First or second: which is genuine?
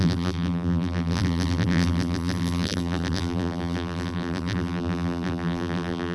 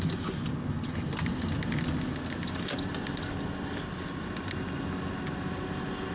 second